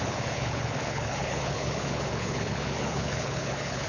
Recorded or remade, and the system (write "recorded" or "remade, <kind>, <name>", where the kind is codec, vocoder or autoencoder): remade, codec, HILCodec